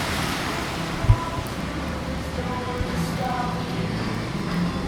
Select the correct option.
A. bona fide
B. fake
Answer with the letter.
B